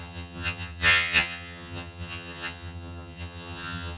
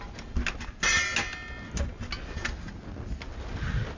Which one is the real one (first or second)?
second